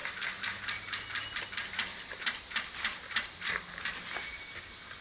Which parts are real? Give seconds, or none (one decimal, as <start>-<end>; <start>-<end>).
0.0-1.9; 3.5-5.0

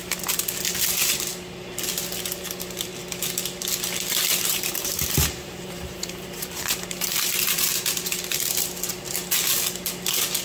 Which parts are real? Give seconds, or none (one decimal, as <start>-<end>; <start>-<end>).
0.0-4.5; 7.8-10.4

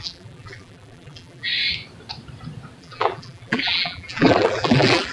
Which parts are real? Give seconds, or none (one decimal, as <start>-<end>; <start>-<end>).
1.5-2.8

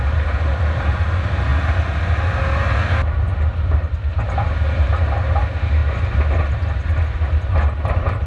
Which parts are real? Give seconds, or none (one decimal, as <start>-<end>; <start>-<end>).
1.5-4.1; 5.8-6.5

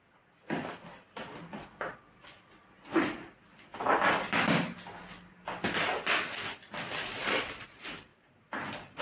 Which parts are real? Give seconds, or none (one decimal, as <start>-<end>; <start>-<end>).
0.0-3.7; 5.3-8.1

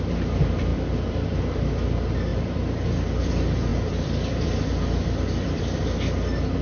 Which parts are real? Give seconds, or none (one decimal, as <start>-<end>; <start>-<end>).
0.0-0.7; 1.4-2.3; 3.3-3.7; 5.6-6.6

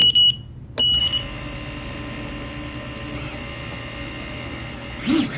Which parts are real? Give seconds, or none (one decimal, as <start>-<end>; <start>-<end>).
0.0-5.4

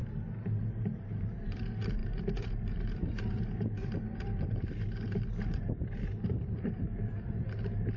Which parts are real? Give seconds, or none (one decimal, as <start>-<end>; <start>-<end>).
0.0-0.6